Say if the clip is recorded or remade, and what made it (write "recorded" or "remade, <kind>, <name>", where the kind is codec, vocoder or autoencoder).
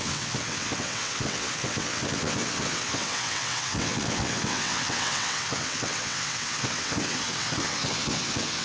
remade, vocoder, WaveNeXt